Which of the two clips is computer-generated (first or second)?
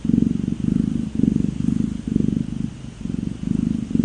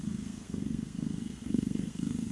second